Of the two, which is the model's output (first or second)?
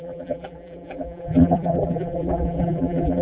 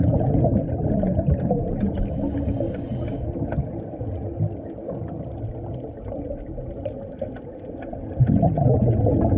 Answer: first